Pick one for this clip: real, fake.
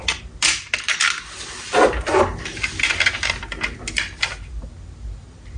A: real